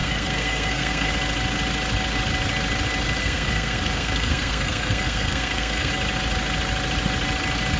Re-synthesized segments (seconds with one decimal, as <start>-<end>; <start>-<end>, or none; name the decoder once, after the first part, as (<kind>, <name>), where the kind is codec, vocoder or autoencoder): 0.0-1.1 (codec, SNAC); 3.2-5.9